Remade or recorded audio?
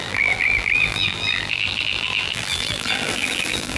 remade